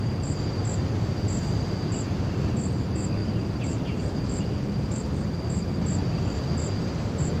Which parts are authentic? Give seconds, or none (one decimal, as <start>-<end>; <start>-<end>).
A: 0.0-3.2; 4.6-7.4